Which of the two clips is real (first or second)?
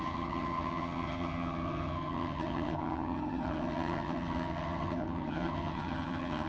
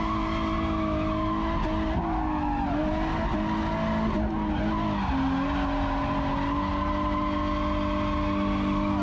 second